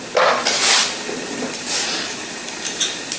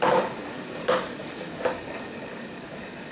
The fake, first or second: second